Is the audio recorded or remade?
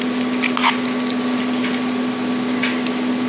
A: recorded